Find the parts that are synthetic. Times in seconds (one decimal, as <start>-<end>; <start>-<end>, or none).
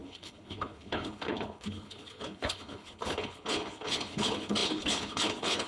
0.0-5.7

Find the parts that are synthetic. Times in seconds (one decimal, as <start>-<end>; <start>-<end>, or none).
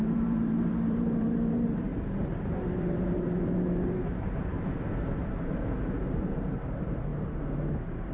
0.0-4.5; 5.2-7.1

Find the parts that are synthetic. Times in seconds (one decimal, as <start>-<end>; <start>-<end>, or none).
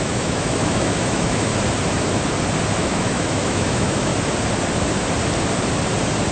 0.0-1.5; 2.8-4.1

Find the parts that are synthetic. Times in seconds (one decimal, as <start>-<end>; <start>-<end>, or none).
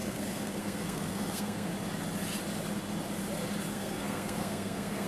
0.0-1.7; 3.7-5.1